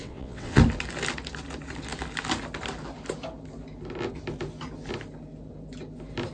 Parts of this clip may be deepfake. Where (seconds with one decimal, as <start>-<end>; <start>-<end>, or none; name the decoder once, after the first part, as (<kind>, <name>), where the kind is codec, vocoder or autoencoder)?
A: 0.0-0.6 (vocoder, WaveNeXt)